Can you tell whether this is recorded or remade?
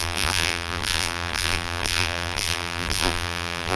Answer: remade